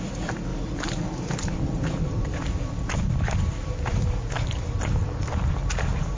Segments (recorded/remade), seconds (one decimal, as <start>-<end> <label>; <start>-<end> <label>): 0.0-6.2 recorded